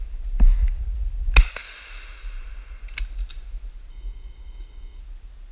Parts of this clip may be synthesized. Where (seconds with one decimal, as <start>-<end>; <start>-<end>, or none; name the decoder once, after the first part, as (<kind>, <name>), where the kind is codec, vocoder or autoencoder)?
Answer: 3.9-5.0 (codec, DAC)

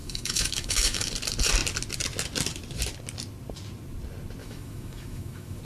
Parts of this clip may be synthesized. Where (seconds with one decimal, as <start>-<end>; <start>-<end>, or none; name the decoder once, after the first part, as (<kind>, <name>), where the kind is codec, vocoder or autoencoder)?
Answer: 0.0-1.1 (autoencoder, DAC-VAE); 4.4-5.6

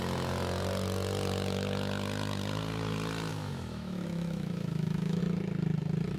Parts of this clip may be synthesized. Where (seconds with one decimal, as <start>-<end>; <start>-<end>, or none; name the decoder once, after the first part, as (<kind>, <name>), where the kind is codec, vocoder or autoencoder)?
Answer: 3.3-5.2 (autoencoder, DAC-VAE)

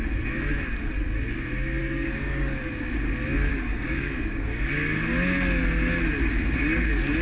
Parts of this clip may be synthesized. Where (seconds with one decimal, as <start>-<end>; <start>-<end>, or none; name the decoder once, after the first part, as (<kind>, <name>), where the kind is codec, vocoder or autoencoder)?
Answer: 1.8-2.6 (codec, DAC); 3.5-4.7

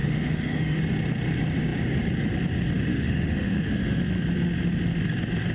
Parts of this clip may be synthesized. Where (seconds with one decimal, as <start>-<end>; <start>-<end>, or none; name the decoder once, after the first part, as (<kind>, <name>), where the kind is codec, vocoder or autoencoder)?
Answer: 0.0-0.8 (autoencoder, DAC-VAE); 2.9-4.0

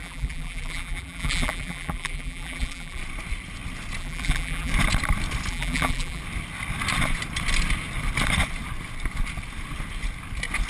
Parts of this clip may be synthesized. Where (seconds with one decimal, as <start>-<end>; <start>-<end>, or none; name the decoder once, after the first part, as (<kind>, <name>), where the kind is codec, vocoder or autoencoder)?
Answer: 0.0-3.0 (vocoder, BigVGAN v2); 4.0-4.7; 5.5-6.2